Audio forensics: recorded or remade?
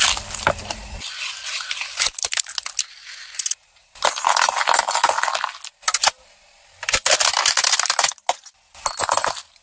recorded